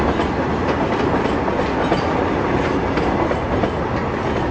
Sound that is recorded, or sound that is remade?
recorded